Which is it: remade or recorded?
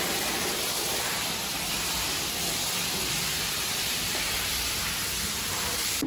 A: remade